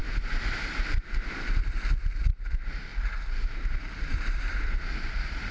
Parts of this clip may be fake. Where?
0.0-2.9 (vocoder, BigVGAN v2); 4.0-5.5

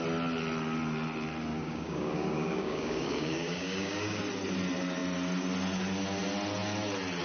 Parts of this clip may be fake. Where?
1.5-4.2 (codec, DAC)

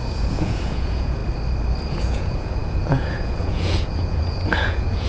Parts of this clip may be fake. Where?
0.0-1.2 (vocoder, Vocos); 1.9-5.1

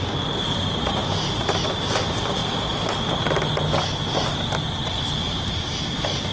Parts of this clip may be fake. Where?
none